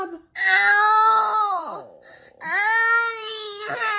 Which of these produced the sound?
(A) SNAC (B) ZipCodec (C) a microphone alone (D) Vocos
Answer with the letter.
C